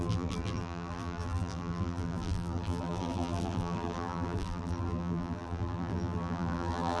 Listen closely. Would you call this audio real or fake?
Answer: fake